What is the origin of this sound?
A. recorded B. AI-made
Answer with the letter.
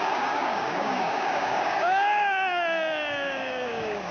B